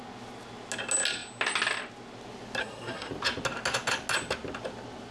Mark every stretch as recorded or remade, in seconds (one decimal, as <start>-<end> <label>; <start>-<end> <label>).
0.0-2.6 recorded; 2.6-3.1 remade; 3.1-5.1 recorded